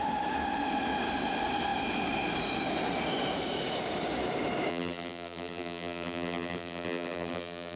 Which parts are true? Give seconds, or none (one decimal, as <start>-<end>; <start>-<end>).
0.0-4.7